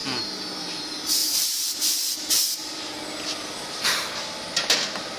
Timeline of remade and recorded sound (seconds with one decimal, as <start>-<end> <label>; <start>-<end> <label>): 0.0-0.6 recorded; 0.6-2.6 remade; 2.6-5.2 recorded